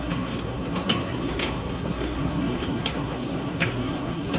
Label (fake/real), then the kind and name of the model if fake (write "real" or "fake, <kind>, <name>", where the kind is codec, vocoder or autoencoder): fake, codec, SNAC